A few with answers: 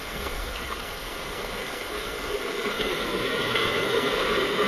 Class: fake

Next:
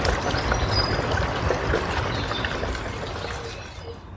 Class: real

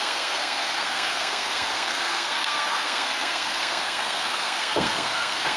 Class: fake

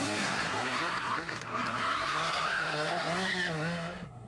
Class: fake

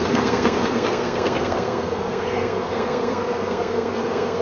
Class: fake